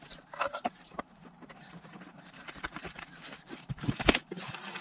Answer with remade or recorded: remade